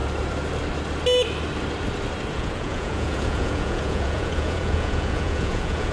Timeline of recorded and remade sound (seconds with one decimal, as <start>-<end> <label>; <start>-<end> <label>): 0.0-2.3 recorded; 2.3-5.9 remade